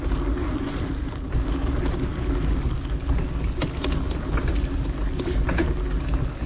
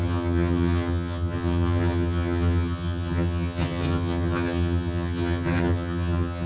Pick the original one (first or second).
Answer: first